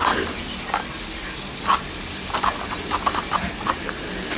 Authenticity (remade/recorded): recorded